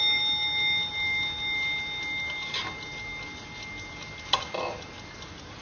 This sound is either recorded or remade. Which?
recorded